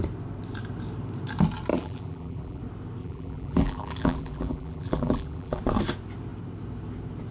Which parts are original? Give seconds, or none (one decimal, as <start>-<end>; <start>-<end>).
0.0-1.7; 2.6-3.0; 5.6-7.3